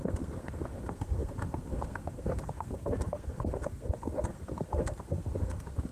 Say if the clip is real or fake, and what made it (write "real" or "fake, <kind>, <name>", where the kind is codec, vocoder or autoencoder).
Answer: fake, codec, SNAC